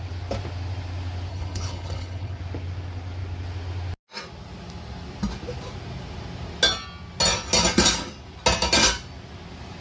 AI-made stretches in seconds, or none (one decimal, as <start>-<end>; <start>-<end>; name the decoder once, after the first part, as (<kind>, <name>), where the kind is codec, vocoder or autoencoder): 1.3-2.4 (codec, HILCodec)